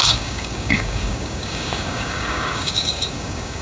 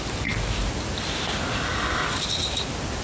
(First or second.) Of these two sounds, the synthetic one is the first